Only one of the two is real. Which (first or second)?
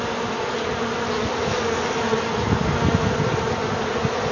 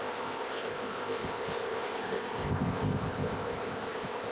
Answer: first